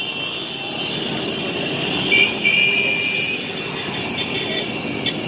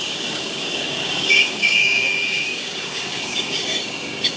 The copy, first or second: second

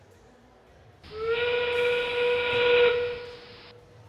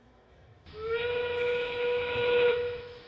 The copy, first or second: second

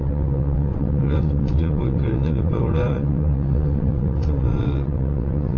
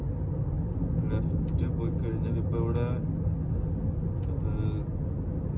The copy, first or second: first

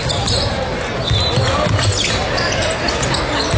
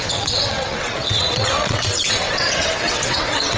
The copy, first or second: second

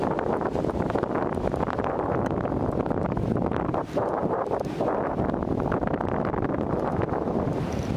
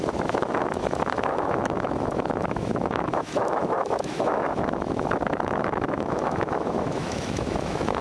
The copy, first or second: second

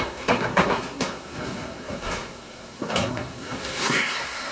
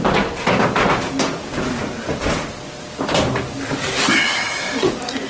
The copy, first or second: first